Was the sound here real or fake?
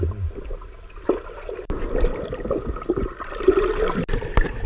real